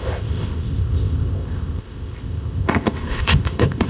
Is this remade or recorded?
remade